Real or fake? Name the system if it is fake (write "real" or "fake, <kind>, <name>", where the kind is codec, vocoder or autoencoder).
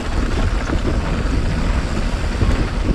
real